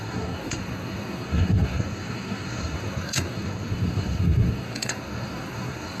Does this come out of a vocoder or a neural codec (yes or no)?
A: yes